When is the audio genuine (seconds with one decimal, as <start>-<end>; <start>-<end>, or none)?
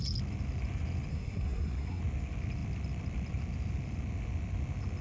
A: 0.0-1.1; 2.0-5.0